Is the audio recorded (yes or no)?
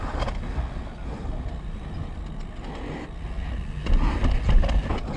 yes